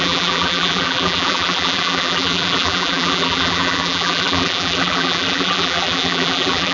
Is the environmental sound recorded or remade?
remade